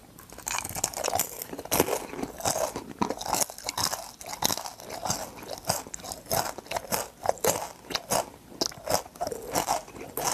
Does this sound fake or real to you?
real